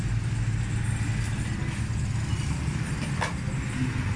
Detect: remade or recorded recorded